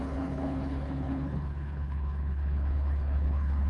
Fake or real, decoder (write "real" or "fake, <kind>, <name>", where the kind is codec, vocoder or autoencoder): fake, codec, HILCodec